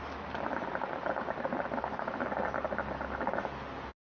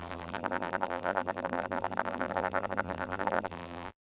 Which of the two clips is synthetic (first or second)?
second